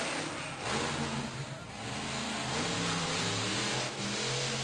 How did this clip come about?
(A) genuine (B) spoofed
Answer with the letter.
A